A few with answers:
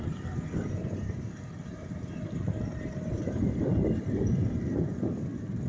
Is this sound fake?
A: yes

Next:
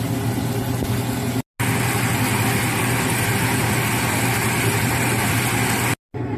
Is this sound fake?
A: no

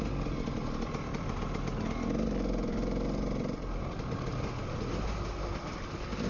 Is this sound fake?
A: no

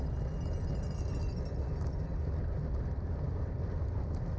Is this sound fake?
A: no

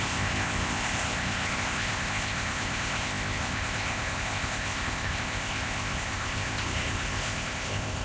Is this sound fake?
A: yes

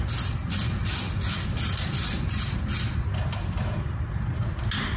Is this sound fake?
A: no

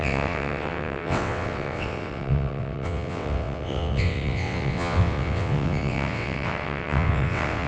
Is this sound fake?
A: yes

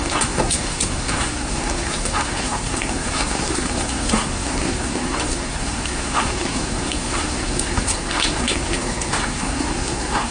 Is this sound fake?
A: yes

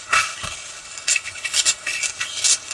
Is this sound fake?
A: yes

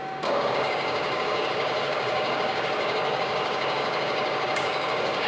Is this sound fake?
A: yes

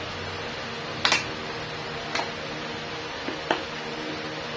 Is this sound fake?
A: no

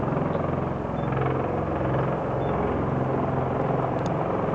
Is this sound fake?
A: no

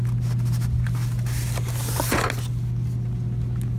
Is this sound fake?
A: no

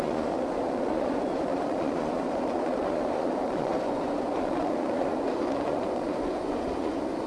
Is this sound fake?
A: yes